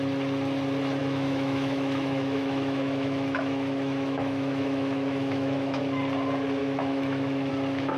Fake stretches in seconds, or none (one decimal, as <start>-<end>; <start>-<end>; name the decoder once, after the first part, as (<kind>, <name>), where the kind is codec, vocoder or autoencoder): 1.0-5.8 (autoencoder, DAC-VAE); 6.6-7.5